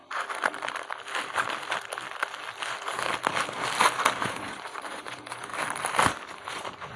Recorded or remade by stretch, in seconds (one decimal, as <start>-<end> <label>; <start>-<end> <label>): 0.0-4.2 recorded; 4.2-5.5 remade; 5.5-6.4 recorded; 6.4-7.0 remade